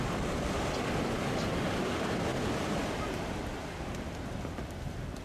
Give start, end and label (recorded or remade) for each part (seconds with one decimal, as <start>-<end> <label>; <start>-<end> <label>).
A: 0.0-5.2 recorded